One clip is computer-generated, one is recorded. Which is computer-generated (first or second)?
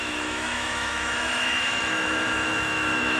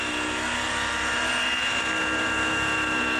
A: first